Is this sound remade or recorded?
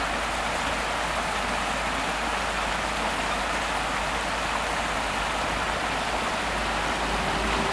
recorded